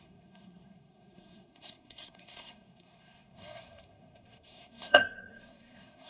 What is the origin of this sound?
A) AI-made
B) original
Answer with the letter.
A